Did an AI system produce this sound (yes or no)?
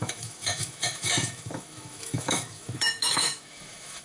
yes